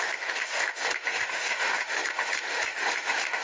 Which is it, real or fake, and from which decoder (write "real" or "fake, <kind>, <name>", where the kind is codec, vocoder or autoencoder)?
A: fake, autoencoder, DAC-VAE